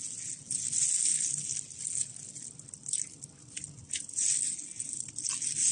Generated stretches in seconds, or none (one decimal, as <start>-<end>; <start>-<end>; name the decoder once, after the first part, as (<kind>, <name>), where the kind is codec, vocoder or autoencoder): none